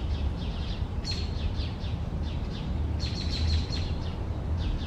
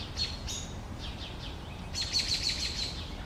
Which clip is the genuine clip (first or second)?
second